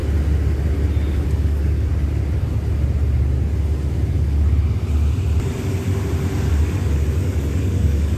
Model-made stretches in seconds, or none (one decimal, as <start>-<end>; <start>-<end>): 1.1-1.9; 6.8-8.2